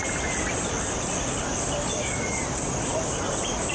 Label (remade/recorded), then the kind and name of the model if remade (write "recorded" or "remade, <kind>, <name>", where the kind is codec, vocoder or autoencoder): recorded